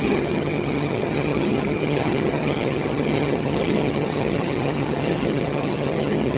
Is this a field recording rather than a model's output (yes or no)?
no